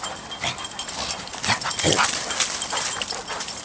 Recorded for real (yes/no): yes